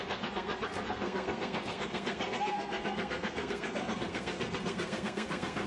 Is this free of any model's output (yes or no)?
no